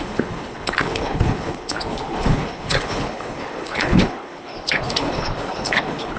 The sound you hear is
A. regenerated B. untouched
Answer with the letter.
A